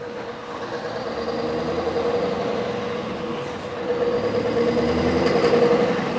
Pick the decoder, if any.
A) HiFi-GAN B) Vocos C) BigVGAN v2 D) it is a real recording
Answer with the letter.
D